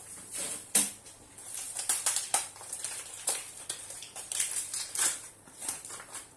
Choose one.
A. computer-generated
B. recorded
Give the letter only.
A